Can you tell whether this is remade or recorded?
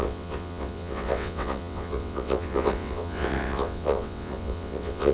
remade